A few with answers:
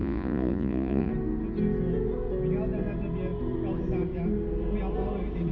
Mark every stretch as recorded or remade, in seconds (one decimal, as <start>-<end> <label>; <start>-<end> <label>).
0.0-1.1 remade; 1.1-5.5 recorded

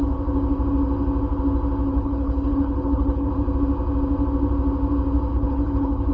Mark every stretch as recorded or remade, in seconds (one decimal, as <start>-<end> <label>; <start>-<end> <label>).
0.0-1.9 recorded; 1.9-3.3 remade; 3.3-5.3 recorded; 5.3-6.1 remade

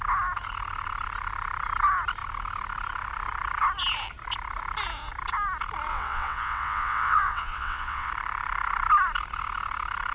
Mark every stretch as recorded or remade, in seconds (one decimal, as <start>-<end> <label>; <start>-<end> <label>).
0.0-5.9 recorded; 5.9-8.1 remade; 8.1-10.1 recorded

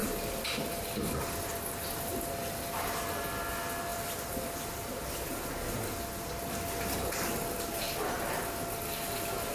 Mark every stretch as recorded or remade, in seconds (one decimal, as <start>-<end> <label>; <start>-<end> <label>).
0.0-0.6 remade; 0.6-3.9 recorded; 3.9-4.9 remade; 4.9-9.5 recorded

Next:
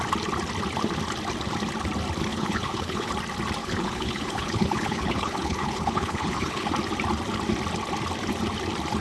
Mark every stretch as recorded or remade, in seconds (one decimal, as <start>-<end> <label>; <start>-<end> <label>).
0.0-2.3 recorded; 2.3-3.1 remade; 3.1-3.6 recorded; 3.6-6.7 remade; 6.7-9.0 recorded

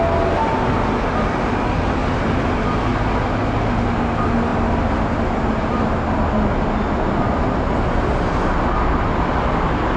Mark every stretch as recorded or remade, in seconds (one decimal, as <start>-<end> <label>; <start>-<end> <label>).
0.0-10.0 recorded

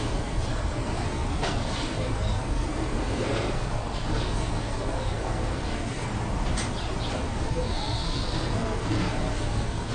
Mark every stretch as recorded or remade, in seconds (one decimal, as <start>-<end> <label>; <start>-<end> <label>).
0.0-6.1 remade; 6.1-7.1 recorded; 7.1-9.9 remade

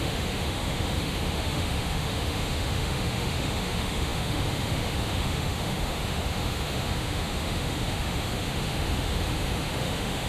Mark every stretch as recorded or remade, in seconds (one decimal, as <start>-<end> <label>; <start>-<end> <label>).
0.0-10.3 remade